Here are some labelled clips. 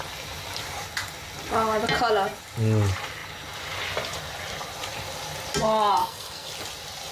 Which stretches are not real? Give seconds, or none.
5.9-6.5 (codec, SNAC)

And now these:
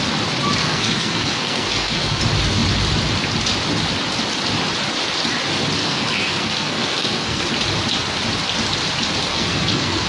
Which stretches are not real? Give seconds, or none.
0.6-2.2 (codec, SNAC); 5.8-7.5; 9.3-10.1

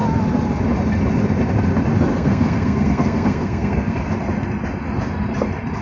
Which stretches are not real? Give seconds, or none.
2.1-4.0 (codec, SNAC)

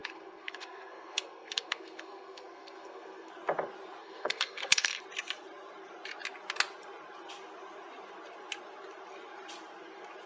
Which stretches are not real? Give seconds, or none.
0.0-3.3 (codec, SNAC); 4.0-5.0

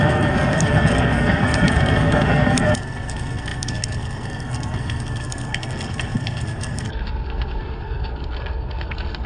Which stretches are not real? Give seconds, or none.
0.0-9.3 (codec, SNAC)

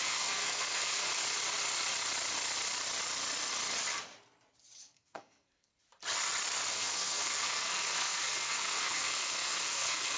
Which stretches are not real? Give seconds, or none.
0.0-1.1 (codec, SNAC); 4.8-5.7; 6.7-10.2

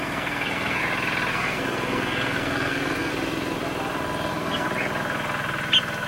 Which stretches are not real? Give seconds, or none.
0.0-0.8 (codec, SNAC); 1.3-3.1; 4.3-4.7